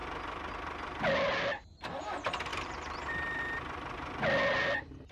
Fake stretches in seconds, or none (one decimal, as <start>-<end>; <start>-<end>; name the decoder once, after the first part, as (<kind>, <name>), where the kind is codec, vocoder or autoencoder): 2.5-3.4 (vocoder, BigVGAN v2)